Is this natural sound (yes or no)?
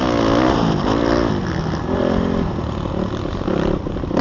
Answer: yes